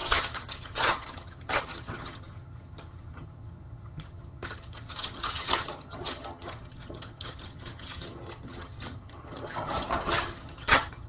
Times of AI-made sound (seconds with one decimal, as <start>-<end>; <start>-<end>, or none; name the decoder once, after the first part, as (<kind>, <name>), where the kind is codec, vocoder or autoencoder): 0.0-11.1 (vocoder, HiFi-GAN)